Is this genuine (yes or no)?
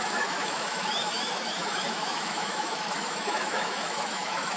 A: no